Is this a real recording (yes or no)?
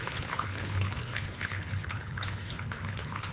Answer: no